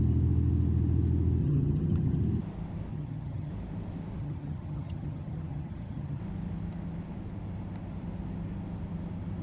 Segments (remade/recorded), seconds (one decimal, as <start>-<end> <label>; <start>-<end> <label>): 0.0-1.4 recorded; 1.4-2.2 remade; 2.2-2.9 recorded; 2.9-3.5 remade; 3.5-4.2 recorded; 4.2-6.2 remade; 6.2-9.4 recorded